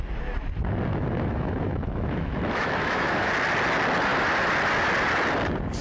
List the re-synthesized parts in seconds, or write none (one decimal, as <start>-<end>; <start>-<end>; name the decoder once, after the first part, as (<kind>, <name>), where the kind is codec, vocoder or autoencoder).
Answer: 0.9-3.3 (autoencoder, DAC-VAE)

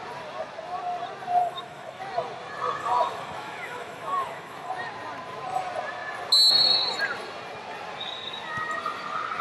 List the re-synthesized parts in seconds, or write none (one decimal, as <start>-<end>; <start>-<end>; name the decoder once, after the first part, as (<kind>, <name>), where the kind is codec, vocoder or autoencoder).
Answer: 1.4-2.0 (autoencoder, DAC-VAE); 2.8-4.7